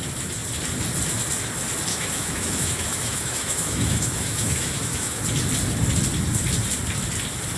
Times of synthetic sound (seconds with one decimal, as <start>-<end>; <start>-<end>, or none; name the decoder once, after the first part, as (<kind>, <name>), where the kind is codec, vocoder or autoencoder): 1.9-5.2 (autoencoder, DAC-VAE)